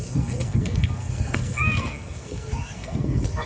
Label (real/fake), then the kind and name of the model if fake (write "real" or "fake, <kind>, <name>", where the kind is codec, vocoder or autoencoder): fake, codec, SNAC